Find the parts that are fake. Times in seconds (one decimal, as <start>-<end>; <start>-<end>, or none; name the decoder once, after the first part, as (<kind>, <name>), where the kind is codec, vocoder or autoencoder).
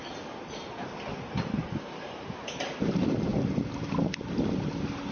none